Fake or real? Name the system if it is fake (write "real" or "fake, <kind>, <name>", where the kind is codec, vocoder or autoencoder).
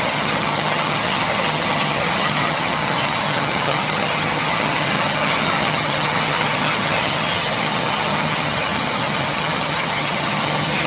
fake, vocoder, HiFi-GAN